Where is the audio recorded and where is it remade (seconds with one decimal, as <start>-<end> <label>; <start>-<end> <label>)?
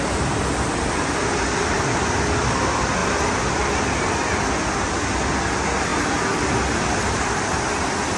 0.0-5.9 recorded; 5.9-6.9 remade; 6.9-8.2 recorded